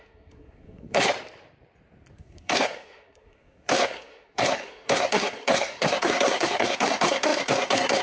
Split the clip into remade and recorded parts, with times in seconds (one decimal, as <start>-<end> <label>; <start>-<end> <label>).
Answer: 0.0-1.1 remade; 1.1-2.1 recorded; 2.1-8.0 remade